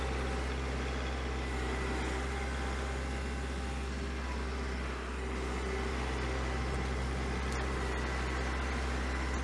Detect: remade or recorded recorded